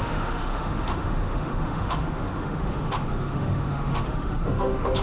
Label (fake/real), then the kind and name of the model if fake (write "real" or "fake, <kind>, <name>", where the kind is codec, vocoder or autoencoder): fake, autoencoder, DAC-VAE